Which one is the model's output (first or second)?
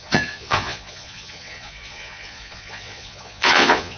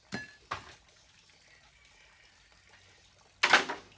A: first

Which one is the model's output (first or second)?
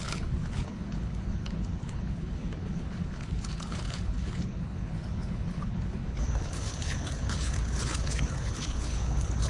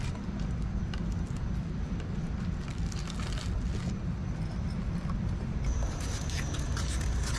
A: first